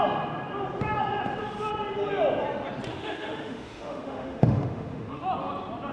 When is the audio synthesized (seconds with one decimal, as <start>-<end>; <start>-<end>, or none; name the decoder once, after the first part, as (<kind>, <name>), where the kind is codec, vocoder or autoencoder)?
2.9-5.2 (autoencoder, DAC-VAE)